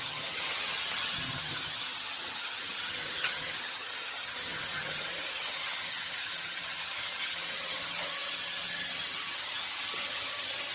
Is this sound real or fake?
fake